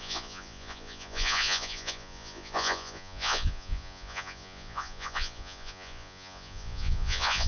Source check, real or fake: fake